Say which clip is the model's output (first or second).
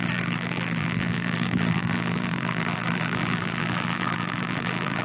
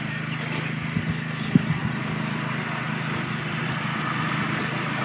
first